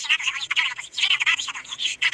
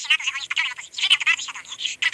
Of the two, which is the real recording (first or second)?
second